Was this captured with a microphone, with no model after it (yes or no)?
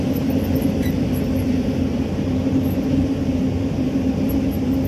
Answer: no